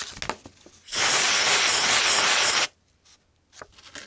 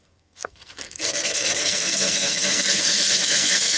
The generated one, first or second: second